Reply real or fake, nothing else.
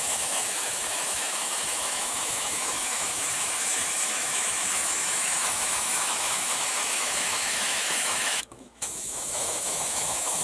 fake